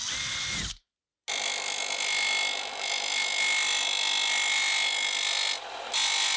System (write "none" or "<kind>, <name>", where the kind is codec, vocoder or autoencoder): none